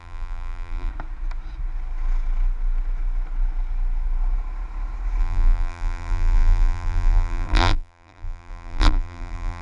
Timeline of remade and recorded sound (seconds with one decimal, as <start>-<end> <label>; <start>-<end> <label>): 0.0-0.9 remade; 0.9-5.2 recorded; 5.2-9.6 remade